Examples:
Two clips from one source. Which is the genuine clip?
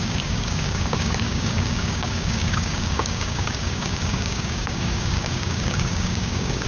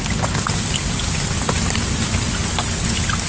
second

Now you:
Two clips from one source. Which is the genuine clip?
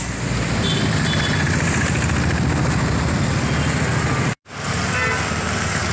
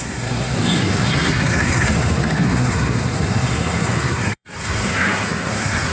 first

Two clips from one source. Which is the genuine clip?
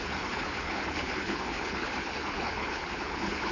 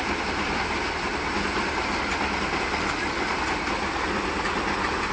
second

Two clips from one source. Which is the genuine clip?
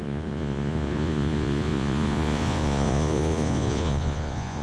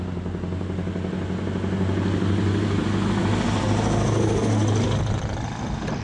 second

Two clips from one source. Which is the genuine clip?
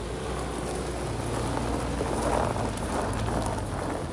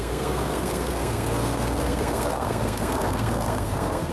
first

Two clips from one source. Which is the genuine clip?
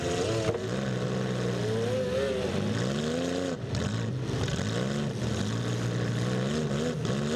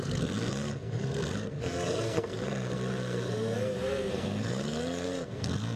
first